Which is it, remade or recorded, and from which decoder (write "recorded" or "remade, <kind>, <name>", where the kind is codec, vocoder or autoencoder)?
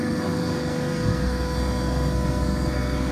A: remade, codec, SNAC